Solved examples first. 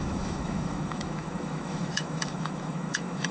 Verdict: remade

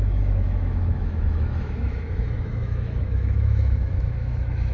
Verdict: remade